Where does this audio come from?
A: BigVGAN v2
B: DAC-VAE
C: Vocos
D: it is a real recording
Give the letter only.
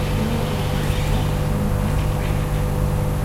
D